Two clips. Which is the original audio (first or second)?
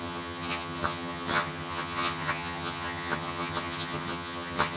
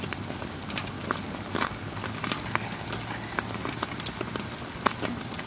second